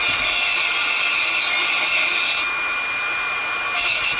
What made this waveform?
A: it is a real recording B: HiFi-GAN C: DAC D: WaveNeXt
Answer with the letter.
A